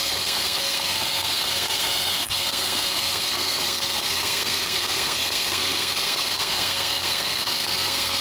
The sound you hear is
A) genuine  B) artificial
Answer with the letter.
B